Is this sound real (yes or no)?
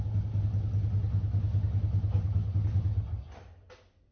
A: yes